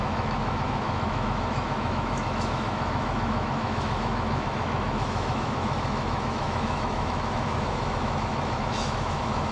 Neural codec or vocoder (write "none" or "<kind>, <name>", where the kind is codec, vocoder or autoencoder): autoencoder, DAC-VAE